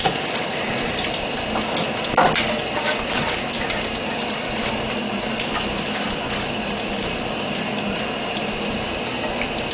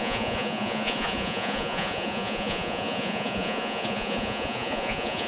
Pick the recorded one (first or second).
first